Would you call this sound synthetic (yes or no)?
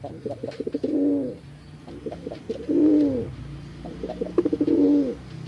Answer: no